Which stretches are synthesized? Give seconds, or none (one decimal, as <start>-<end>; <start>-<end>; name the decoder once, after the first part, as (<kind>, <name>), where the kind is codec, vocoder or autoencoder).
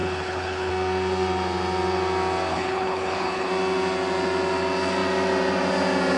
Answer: 0.0-0.7 (codec, HILCodec); 2.5-3.5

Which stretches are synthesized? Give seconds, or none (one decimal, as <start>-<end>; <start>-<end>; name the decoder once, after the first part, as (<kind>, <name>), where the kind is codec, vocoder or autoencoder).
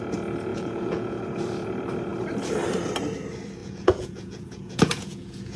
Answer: 0.5-1.2 (vocoder, Vocos); 3.6-5.6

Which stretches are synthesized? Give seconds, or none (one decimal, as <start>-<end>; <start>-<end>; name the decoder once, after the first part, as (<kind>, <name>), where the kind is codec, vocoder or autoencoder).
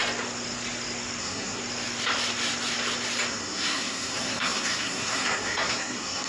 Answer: 1.2-1.6 (codec, SNAC); 3.3-6.3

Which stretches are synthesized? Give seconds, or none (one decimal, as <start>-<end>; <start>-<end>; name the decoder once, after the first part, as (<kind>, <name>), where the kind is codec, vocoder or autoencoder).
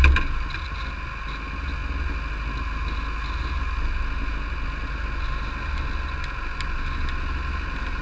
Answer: none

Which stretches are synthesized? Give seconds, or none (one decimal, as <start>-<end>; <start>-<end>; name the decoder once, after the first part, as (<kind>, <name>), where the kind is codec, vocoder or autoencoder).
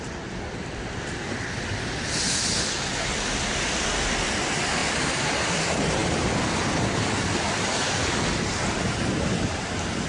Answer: 0.0-4.8 (vocoder, BigVGAN v2); 5.5-6.0; 8.9-10.1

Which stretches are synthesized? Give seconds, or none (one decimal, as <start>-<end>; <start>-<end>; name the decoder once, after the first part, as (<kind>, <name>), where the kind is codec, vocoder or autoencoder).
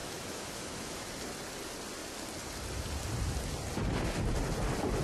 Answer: 0.0-1.1 (autoencoder, DAC-VAE)